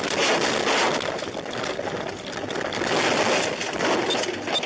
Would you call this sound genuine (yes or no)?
yes